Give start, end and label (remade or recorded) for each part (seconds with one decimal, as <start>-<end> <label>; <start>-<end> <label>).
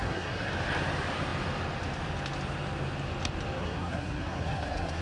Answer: 0.0-0.5 remade; 0.5-3.6 recorded; 3.6-5.0 remade